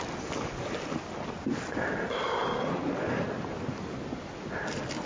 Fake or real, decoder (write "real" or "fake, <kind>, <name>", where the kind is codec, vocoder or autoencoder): real